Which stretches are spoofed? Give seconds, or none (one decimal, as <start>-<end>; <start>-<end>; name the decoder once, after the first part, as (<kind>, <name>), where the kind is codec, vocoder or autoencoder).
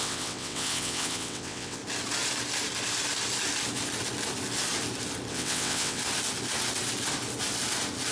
0.0-1.8 (vocoder, WaveNeXt); 5.3-6.0